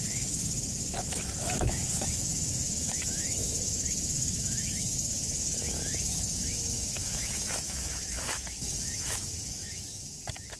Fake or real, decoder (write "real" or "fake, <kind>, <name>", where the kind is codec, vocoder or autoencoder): fake, autoencoder, DAC-VAE